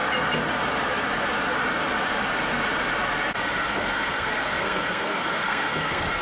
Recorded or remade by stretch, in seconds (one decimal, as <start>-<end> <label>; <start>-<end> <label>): 0.0-3.7 recorded; 3.7-6.2 remade